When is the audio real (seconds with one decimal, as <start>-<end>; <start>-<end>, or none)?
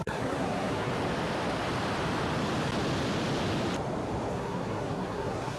0.9-4.3